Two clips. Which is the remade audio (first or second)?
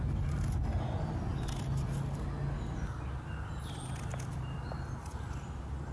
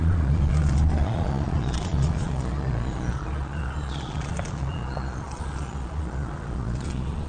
second